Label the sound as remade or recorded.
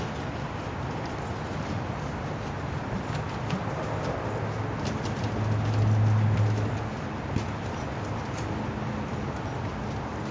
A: recorded